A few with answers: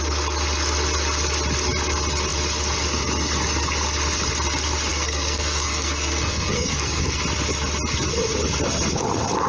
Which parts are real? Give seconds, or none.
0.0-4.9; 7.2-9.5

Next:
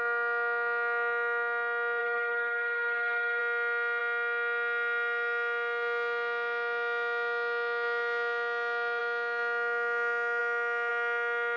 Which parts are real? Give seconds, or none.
0.0-2.0; 3.4-11.6

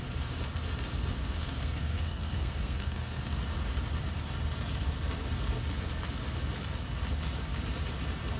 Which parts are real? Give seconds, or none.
0.0-1.2; 3.2-8.4